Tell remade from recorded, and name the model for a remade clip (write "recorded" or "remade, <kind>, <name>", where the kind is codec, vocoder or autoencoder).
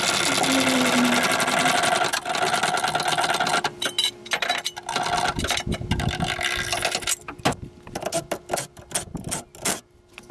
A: recorded